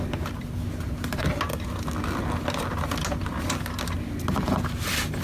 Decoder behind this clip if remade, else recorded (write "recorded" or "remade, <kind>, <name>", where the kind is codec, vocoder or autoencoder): recorded